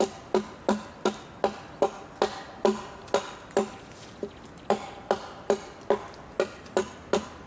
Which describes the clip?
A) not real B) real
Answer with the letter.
B